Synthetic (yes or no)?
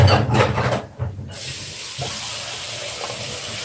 no